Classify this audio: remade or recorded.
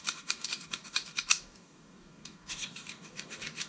remade